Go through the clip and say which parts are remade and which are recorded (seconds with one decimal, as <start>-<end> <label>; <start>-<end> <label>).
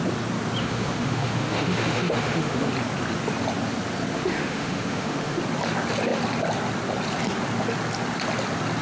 0.0-0.6 recorded; 0.6-2.7 remade; 2.7-4.1 recorded; 4.1-5.4 remade; 5.4-8.8 recorded